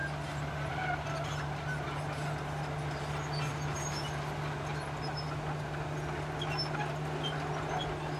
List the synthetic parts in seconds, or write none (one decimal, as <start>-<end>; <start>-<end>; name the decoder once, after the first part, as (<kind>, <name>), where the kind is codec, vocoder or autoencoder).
none